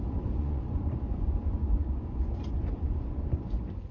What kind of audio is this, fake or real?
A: fake